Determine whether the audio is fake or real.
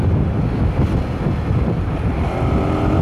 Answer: fake